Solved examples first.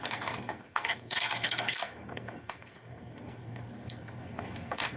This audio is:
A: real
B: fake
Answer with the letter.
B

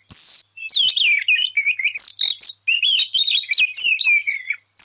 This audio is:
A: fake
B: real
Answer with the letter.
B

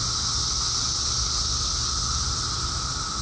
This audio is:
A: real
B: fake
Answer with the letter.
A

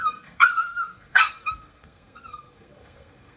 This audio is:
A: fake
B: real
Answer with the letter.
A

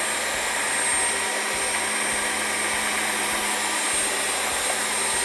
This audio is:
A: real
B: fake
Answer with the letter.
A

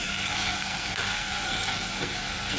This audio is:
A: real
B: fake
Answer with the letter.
B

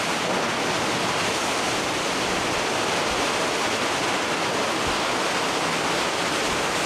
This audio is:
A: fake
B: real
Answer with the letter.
B